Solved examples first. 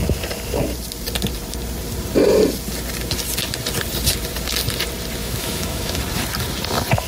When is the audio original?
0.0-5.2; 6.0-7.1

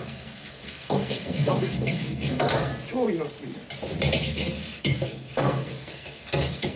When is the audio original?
2.7-4.2

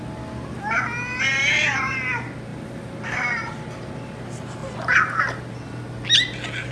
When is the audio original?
0.0-2.5; 3.9-4.6; 5.4-6.7

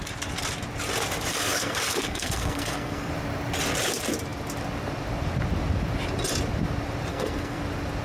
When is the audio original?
0.0-1.3; 3.1-7.1; 7.6-8.0

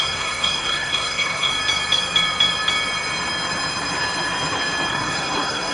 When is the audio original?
1.5-4.9

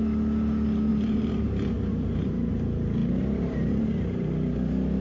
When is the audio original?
0.0-0.9; 2.5-3.0; 4.3-5.0

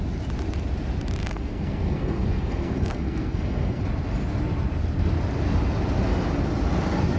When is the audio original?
0.0-1.2; 3.8-7.2